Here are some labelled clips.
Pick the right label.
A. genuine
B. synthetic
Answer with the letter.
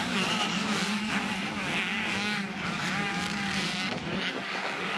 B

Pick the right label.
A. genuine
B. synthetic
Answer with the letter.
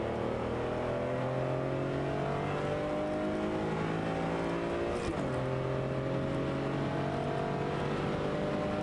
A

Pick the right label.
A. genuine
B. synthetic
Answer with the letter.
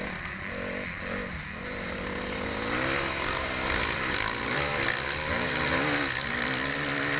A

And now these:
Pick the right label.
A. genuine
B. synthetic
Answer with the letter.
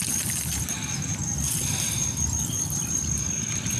A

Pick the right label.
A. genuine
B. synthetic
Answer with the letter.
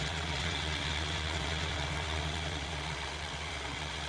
B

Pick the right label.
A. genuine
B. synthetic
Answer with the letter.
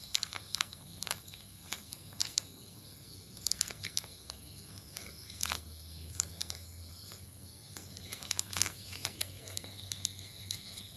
B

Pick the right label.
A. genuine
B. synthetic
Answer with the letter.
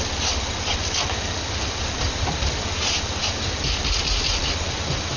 A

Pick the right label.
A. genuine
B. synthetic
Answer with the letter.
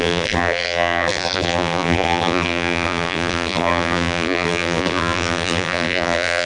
B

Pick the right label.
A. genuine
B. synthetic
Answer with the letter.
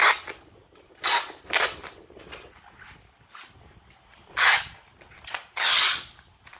A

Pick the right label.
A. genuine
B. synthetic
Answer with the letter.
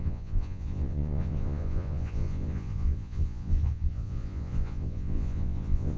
B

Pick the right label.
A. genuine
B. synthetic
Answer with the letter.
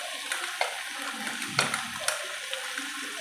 A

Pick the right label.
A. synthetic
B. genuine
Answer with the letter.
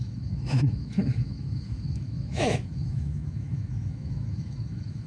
A